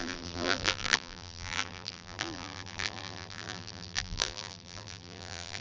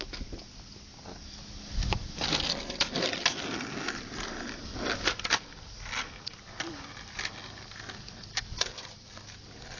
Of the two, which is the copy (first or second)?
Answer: first